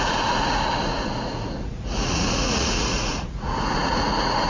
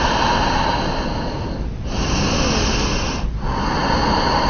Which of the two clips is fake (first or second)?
first